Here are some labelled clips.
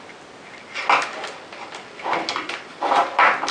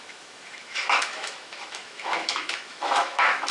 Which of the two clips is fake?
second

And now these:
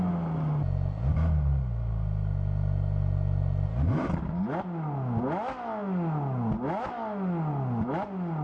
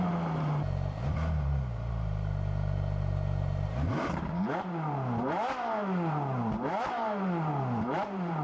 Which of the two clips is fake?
second